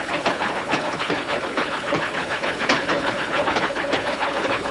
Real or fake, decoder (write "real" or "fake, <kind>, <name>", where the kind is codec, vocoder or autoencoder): fake, codec, HILCodec